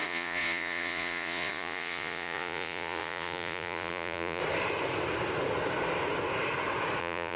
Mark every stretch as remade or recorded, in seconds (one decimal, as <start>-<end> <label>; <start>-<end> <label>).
0.0-4.4 remade; 4.4-7.0 recorded; 7.0-7.4 remade